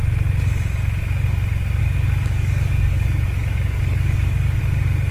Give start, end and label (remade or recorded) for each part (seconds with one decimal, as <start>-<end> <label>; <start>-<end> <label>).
0.0-1.8 recorded; 1.8-4.6 remade; 4.6-5.1 recorded